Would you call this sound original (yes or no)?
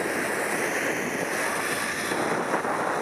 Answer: yes